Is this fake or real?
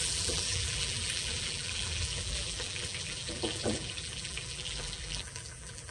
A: fake